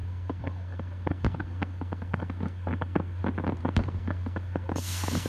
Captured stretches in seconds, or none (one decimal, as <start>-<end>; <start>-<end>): 3.2-3.6